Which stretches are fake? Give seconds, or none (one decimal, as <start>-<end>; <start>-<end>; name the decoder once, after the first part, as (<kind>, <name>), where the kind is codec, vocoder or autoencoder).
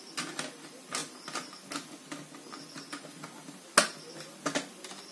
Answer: none